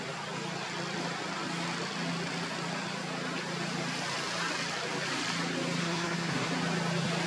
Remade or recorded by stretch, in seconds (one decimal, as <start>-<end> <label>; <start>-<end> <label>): 0.0-5.8 recorded; 5.8-6.5 remade; 6.5-7.3 recorded